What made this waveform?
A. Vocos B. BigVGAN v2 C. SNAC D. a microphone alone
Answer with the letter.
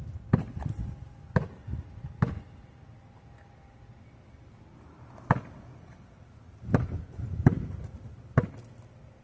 D